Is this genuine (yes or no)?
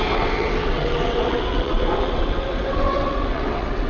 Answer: no